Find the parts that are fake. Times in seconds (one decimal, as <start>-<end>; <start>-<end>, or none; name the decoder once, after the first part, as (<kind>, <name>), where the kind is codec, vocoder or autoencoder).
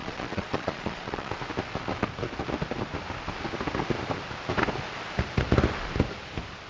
0.0-1.3 (vocoder, Vocos)